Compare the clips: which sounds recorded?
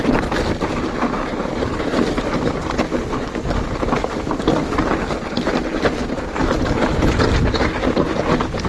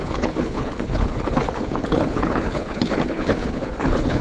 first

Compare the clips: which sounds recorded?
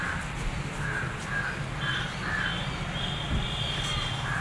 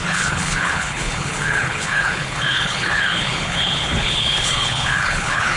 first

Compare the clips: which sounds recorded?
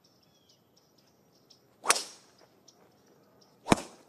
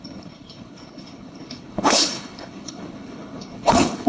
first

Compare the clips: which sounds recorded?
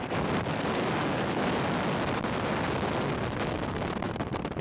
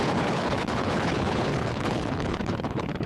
first